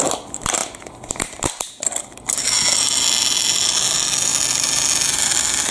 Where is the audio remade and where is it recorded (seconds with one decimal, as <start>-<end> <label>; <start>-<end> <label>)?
0.0-5.7 recorded